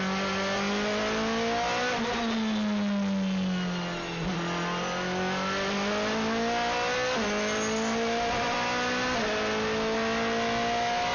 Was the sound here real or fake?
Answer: real